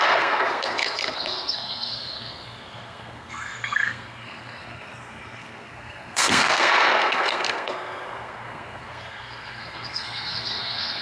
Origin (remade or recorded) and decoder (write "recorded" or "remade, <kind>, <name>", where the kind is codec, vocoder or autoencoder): remade, codec, SNAC